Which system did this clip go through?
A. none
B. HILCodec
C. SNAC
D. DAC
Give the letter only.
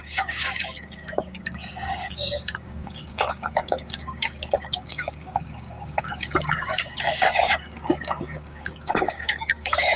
D